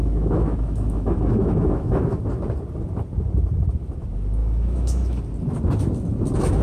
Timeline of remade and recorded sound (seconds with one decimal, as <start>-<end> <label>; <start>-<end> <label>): 0.0-2.2 remade; 2.2-4.4 recorded; 4.4-5.2 remade; 5.2-6.6 recorded